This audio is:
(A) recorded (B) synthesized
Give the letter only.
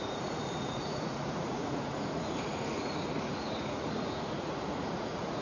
B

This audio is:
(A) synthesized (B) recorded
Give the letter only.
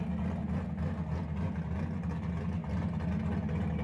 B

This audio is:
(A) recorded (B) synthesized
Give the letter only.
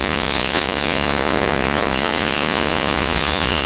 B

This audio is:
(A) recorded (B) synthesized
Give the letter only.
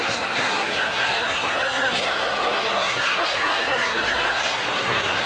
B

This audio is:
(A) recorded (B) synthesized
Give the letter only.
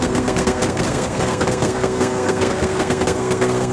B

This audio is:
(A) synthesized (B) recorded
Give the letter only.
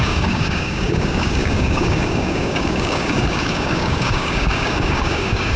A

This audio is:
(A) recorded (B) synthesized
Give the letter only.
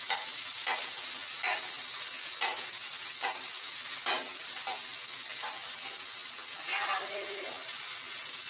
A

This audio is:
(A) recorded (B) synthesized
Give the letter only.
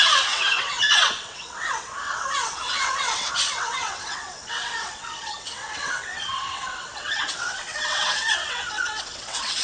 B